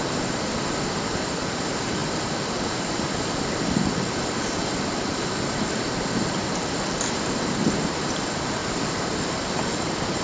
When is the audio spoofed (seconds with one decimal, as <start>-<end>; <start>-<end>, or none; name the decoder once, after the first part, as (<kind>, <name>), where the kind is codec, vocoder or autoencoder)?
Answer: 8.6-10.2 (vocoder, BigVGAN v2)